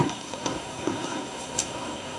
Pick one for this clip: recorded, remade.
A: remade